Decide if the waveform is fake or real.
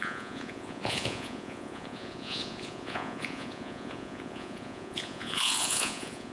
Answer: fake